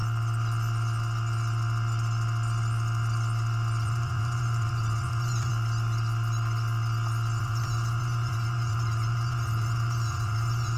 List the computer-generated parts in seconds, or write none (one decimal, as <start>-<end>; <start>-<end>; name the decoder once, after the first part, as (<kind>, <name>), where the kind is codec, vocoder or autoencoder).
3.8-5.5 (vocoder, BigVGAN v2); 7.4-10.8